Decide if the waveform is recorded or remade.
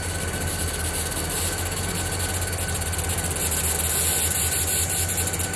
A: recorded